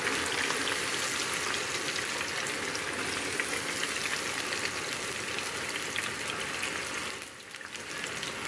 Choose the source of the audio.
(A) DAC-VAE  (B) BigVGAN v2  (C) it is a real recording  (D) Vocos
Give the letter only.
C